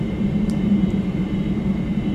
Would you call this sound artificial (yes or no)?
yes